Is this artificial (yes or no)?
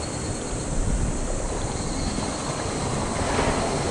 no